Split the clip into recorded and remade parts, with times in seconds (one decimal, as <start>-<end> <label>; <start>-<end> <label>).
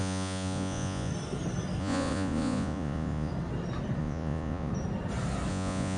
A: 0.0-1.1 remade; 1.1-1.8 recorded; 1.8-3.3 remade; 3.3-4.0 recorded; 4.0-4.7 remade; 4.7-5.5 recorded; 5.5-6.0 remade